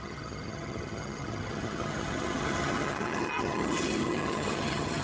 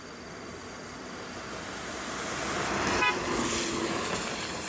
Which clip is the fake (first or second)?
first